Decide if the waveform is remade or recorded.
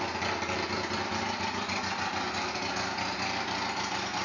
recorded